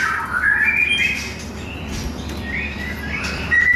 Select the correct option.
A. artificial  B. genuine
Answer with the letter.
A